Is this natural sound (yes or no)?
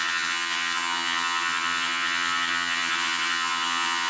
no